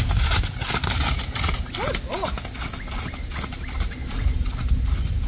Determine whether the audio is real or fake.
real